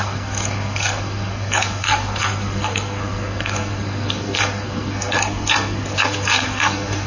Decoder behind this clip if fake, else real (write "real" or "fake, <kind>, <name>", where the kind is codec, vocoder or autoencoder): fake, codec, SNAC